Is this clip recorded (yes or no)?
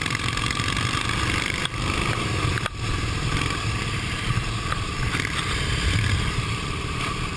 no